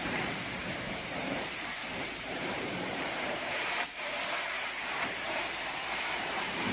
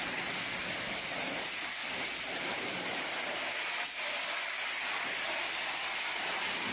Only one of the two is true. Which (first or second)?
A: second